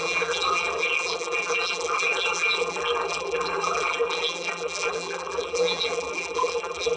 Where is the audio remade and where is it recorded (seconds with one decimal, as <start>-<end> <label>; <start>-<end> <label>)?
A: 0.0-7.0 remade